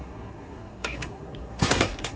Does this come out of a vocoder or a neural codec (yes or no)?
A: yes